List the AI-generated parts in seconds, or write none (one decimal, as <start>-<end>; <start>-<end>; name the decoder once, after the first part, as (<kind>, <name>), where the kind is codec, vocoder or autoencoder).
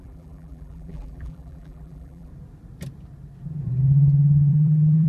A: 0.0-2.3 (vocoder, BigVGAN v2); 4.5-5.1